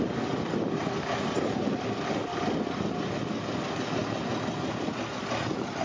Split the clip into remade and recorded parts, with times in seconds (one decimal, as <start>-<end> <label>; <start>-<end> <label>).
0.0-5.8 recorded